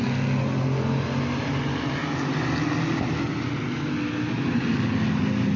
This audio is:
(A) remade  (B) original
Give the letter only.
B